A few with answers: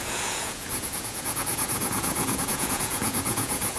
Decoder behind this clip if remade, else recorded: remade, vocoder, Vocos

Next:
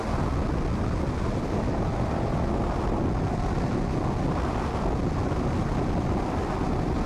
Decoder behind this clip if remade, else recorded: recorded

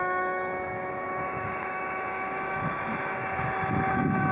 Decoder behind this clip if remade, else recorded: remade, autoencoder, DAC-VAE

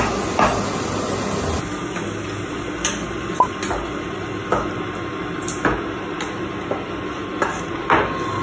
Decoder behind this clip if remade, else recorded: recorded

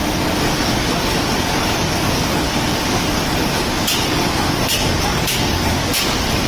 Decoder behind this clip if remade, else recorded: remade, codec, DAC